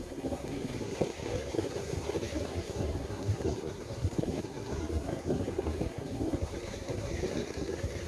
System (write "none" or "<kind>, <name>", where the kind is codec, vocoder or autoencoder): codec, SNAC